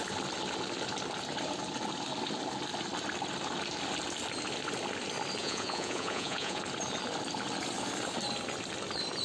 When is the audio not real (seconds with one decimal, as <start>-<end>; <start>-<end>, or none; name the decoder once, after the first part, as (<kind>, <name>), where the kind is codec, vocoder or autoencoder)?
5.4-6.6 (vocoder, Vocos)